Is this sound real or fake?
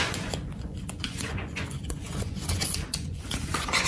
fake